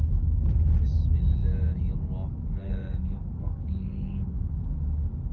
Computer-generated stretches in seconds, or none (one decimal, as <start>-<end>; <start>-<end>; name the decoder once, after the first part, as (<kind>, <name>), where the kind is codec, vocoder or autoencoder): 2.6-4.6 (codec, SNAC)